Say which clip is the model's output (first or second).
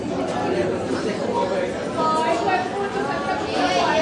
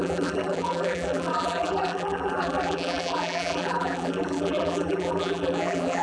second